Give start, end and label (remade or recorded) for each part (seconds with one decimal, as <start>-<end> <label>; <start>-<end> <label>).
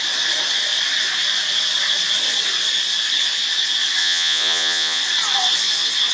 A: 0.0-4.0 recorded; 4.0-5.0 remade; 5.0-6.1 recorded